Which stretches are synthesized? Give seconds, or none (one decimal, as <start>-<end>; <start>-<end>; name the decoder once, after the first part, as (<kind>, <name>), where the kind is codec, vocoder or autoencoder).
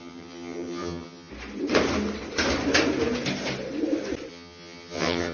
0.0-1.3 (vocoder, HiFi-GAN); 4.3-5.3